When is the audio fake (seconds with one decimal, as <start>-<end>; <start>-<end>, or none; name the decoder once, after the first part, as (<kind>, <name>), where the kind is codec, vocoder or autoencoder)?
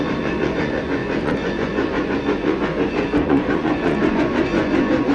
0.0-5.1 (vocoder, Vocos)